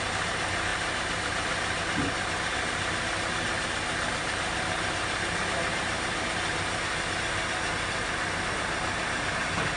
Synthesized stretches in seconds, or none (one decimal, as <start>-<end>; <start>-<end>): none